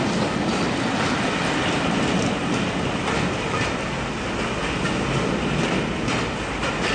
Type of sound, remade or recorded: recorded